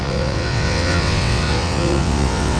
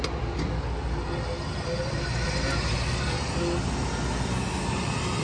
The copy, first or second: first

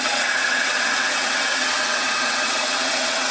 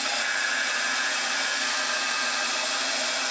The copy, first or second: first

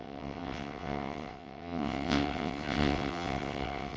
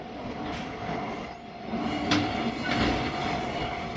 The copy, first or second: first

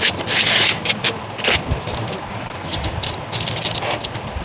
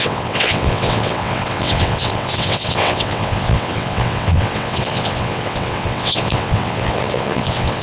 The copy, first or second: second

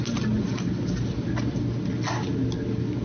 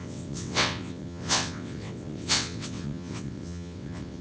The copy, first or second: second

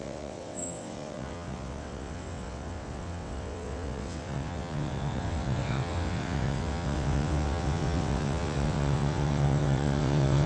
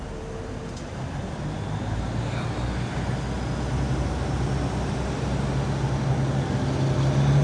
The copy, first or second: first